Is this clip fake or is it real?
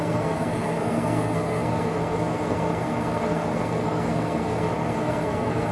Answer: fake